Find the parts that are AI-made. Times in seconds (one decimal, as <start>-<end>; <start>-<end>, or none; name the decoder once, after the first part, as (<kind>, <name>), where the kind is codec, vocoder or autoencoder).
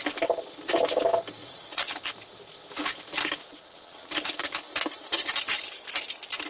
1.4-2.0 (vocoder, WaveNeXt); 3.5-4.1